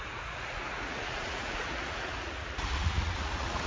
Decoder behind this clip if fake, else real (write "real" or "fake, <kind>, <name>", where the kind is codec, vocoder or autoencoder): fake, vocoder, Vocos